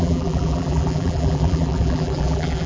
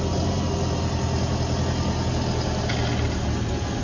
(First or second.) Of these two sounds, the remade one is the first